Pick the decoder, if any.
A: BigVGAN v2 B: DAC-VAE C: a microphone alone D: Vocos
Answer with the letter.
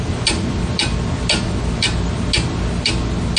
C